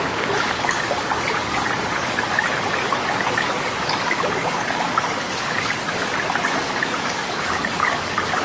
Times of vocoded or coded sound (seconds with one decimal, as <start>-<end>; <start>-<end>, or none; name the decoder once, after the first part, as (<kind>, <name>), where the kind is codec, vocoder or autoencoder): 0.0-6.0 (codec, DAC); 6.5-8.4